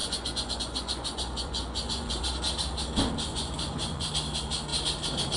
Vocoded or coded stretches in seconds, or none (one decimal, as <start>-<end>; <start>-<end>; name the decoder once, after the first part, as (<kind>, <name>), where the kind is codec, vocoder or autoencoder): 0.0-2.2 (vocoder, Vocos); 3.3-4.1